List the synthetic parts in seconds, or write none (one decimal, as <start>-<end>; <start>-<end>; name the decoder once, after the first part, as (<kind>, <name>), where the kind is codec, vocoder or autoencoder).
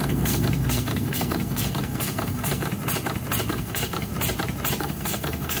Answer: 0.0-2.7 (codec, SNAC); 3.5-4.1; 4.8-5.6